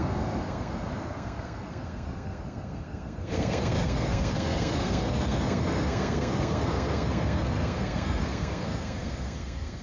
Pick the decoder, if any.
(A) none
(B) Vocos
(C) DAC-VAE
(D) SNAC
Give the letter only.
D